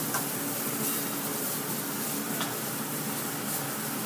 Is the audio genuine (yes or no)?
yes